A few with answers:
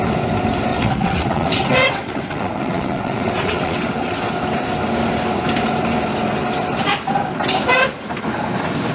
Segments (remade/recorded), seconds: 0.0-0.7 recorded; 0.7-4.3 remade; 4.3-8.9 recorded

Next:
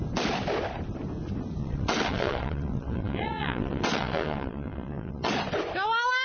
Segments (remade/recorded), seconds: 0.0-1.6 recorded; 1.6-5.3 remade; 5.3-6.2 recorded

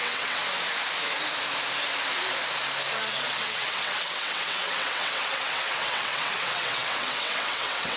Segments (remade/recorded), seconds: 0.0-0.4 remade; 0.4-3.3 recorded; 3.3-8.0 remade